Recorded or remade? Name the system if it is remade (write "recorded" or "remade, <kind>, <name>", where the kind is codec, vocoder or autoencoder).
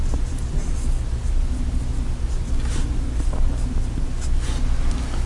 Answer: recorded